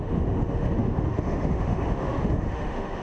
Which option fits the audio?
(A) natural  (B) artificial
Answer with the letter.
B